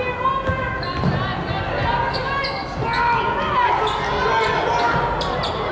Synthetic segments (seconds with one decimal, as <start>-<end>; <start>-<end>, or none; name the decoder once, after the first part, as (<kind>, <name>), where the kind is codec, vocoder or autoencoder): none